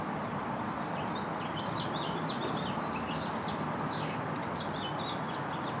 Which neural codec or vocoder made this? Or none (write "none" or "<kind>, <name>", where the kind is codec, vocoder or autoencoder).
none